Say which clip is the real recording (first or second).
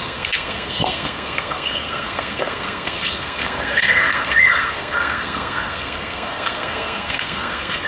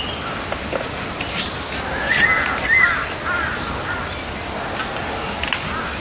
second